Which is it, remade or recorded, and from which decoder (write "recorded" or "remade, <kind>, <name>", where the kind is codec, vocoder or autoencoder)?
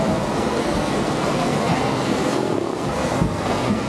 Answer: remade, codec, SNAC